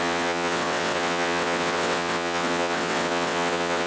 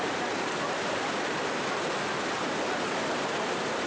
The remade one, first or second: first